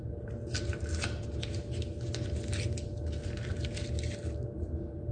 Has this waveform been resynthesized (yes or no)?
no